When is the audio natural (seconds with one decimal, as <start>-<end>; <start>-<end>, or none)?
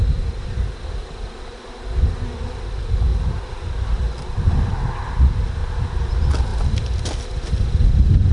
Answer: 0.0-3.1; 4.7-8.3